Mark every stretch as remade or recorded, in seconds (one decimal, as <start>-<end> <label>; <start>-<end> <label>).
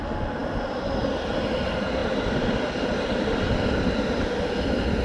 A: 0.0-2.0 recorded; 2.0-4.3 remade; 4.3-5.0 recorded